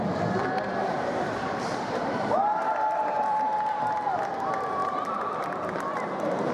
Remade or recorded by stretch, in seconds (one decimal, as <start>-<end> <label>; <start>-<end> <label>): 0.0-0.4 recorded; 0.4-4.2 remade; 4.2-4.8 recorded; 4.8-5.6 remade; 5.6-6.5 recorded